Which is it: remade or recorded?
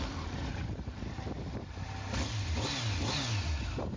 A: recorded